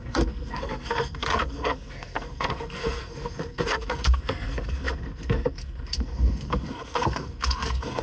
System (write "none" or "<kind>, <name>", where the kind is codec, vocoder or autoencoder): codec, SNAC